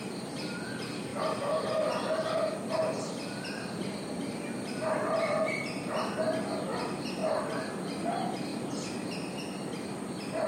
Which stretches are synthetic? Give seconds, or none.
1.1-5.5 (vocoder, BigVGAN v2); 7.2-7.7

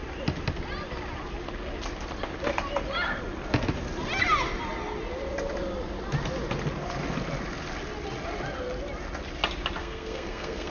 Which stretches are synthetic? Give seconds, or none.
9.8-10.7 (codec, SNAC)

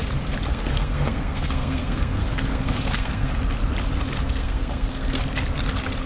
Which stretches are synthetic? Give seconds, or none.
0.5-3.3 (codec, SNAC); 4.4-5.2

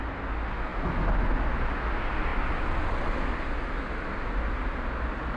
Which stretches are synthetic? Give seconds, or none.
none

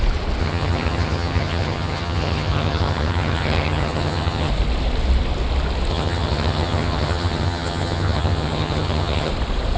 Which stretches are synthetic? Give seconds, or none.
0.4-4.5 (vocoder, HiFi-GAN); 5.9-9.3

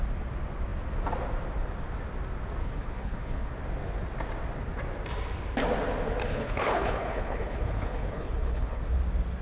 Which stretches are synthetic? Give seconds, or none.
2.6-3.5 (codec, HILCodec); 6.3-8.8

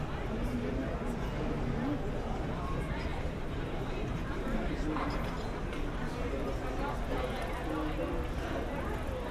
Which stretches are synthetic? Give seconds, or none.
3.1-6.3 (vocoder, BigVGAN v2)

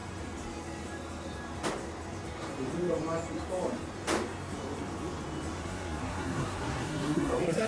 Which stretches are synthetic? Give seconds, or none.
5.6-7.7 (codec, SNAC)